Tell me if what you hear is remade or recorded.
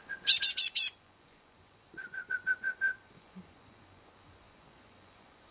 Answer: remade